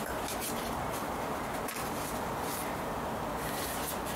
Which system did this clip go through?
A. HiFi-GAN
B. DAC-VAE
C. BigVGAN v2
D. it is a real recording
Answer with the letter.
D